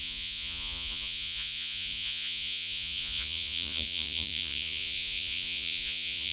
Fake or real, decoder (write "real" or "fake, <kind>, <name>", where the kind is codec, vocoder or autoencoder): fake, vocoder, Vocos